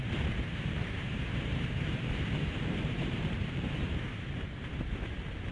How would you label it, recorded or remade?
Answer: remade